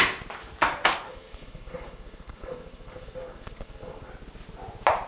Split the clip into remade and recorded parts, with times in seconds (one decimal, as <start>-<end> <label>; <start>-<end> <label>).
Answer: 0.0-1.1 recorded; 1.1-4.1 remade; 4.1-5.1 recorded